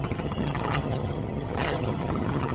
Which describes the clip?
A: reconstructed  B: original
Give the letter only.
A